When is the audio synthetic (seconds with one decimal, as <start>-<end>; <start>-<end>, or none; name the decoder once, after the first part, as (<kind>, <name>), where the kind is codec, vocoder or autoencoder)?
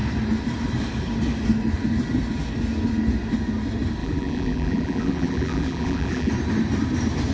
4.0-6.3 (vocoder, BigVGAN v2)